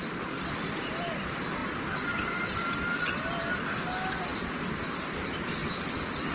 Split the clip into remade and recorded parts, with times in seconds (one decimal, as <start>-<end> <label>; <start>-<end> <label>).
0.0-6.3 recorded

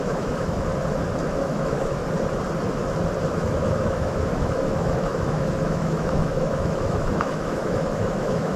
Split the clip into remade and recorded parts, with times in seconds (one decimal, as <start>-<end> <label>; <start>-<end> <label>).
0.0-0.7 remade; 0.7-1.3 recorded; 1.3-2.0 remade; 2.0-3.3 recorded; 3.3-8.6 remade

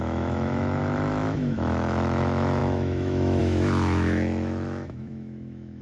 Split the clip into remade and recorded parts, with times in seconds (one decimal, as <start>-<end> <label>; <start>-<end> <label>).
0.0-5.8 remade